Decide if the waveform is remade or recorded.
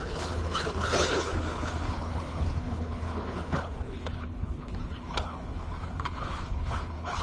remade